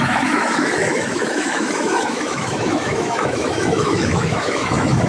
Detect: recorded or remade remade